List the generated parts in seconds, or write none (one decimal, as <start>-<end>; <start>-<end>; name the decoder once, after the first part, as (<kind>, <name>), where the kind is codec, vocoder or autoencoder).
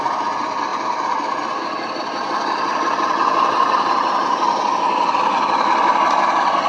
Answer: none